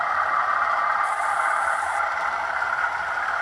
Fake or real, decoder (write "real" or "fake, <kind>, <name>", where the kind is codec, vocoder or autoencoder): real